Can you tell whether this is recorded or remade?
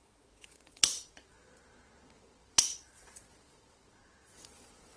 remade